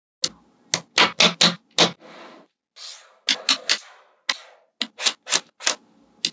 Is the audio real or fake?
real